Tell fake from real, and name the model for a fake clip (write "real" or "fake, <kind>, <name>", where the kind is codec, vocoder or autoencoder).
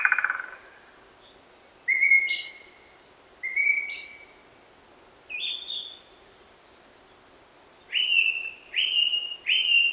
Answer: real